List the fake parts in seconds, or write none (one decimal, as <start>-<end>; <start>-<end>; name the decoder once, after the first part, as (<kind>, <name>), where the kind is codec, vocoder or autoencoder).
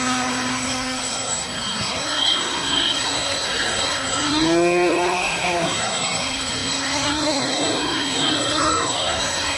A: 0.0-9.6 (codec, SNAC)